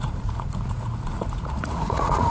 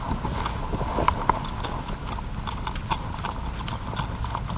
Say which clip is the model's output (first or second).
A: first